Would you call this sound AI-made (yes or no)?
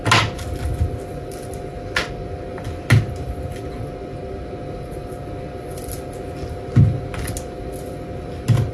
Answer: no